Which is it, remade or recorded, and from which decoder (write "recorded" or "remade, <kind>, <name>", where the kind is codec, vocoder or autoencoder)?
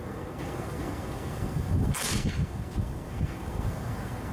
remade, codec, SNAC